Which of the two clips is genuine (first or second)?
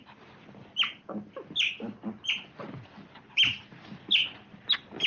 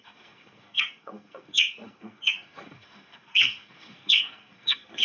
first